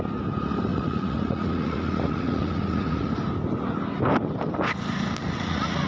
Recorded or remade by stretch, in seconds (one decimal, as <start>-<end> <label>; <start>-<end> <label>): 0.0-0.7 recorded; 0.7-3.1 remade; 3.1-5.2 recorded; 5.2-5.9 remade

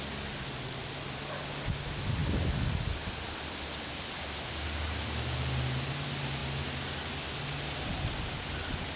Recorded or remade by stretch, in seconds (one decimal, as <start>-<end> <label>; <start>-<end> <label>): 0.0-9.0 recorded

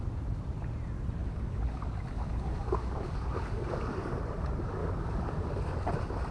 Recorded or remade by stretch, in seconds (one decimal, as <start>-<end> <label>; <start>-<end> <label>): 0.0-1.2 recorded; 1.2-4.2 remade; 4.2-4.8 recorded; 4.8-5.5 remade; 5.5-6.3 recorded